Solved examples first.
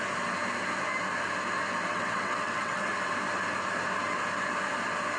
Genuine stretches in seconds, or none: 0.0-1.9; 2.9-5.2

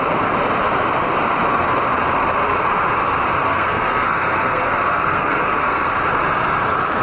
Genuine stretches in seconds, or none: 0.0-3.5; 5.9-7.0